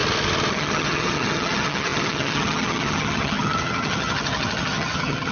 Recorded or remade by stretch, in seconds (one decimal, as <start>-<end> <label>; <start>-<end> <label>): 0.0-0.5 recorded; 0.5-5.3 remade

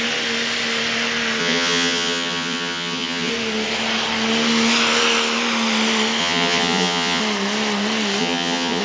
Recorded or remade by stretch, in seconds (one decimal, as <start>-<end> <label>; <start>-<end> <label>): 0.0-1.4 recorded; 1.4-3.3 remade; 3.3-6.2 recorded; 6.2-7.2 remade; 7.2-8.2 recorded; 8.2-8.8 remade